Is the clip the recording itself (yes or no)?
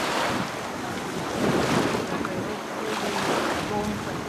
yes